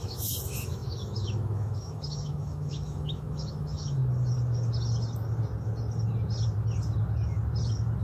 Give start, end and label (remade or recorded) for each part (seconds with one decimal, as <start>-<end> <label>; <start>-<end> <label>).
0.0-4.0 remade; 4.0-8.0 recorded